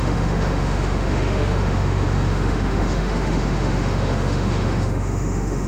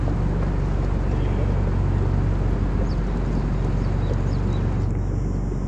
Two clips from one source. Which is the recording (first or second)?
second